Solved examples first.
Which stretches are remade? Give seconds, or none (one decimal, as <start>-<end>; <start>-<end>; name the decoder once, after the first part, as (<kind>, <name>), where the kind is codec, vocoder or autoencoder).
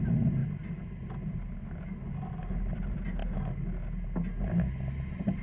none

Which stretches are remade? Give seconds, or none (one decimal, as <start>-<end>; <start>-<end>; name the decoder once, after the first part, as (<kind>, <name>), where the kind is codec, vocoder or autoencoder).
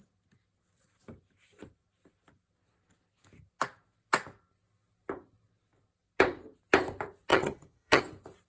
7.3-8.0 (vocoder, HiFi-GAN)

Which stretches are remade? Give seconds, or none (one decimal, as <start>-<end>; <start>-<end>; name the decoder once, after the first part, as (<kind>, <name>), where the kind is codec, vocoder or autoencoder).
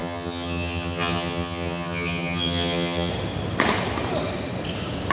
0.0-3.1 (vocoder, HiFi-GAN)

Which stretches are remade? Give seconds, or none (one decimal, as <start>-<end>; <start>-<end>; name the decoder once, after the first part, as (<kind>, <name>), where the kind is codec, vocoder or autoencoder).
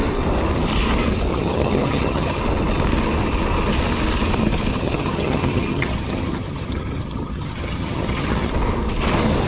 1.3-2.4 (vocoder, HiFi-GAN); 4.7-8.5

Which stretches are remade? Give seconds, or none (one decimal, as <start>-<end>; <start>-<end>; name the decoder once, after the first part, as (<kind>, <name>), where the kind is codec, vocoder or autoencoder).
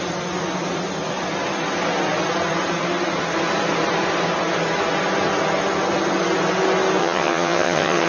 7.0-8.1 (vocoder, HiFi-GAN)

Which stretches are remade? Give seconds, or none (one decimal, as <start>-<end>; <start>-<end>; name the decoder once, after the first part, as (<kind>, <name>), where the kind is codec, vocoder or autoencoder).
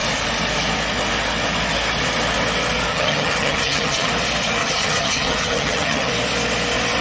2.9-4.1 (vocoder, HiFi-GAN); 4.6-6.1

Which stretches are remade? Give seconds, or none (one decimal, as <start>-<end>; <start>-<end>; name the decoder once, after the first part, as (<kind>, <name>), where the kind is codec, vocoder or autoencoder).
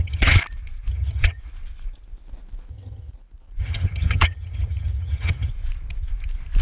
0.0-0.4 (vocoder, HiFi-GAN); 0.9-1.4; 2.7-3.1; 3.6-5.5